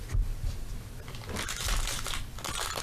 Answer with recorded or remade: recorded